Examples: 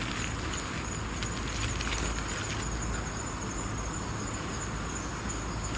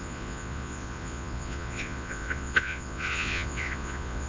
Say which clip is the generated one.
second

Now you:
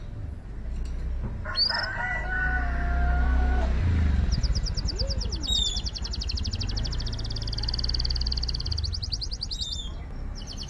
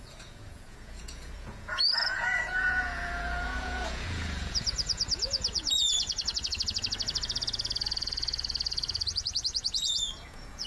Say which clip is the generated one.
second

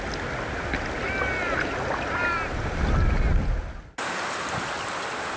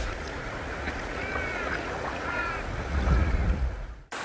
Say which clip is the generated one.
second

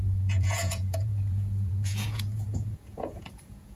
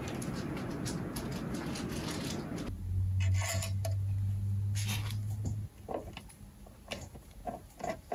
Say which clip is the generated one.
first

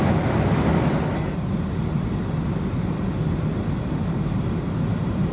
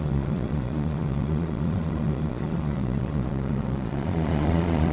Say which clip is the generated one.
second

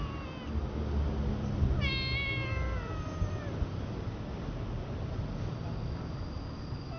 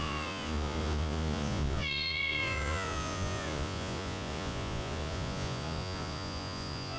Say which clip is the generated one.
second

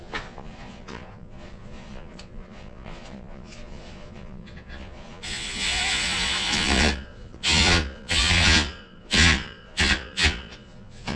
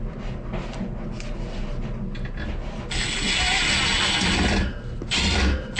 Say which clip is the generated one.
first